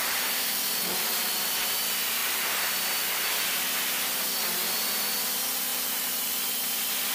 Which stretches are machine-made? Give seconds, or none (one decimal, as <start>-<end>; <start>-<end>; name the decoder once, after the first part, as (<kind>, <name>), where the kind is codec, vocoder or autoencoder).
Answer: 0.0-1.6 (vocoder, BigVGAN v2); 2.2-2.7; 5.7-6.2